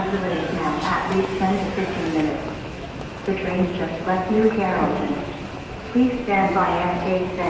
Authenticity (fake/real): fake